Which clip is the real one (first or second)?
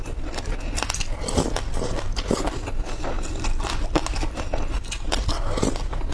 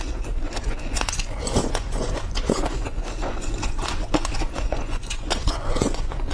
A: first